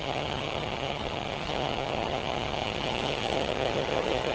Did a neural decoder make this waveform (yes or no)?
yes